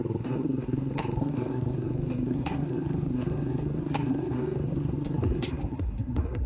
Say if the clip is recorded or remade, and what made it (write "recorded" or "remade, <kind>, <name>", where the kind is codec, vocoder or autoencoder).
remade, codec, SNAC